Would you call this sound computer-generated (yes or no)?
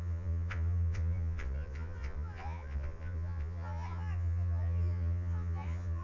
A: yes